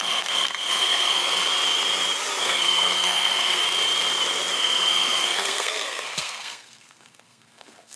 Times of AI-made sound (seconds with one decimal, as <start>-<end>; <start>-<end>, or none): 0.0-1.4; 2.4-3.6; 4.5-8.0